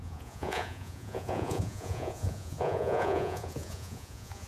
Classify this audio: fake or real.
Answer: fake